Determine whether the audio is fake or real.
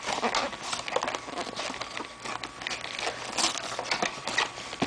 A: real